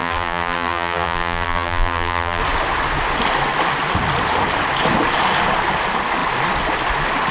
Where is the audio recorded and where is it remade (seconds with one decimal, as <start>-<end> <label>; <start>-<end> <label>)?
0.0-2.4 remade; 2.4-7.3 recorded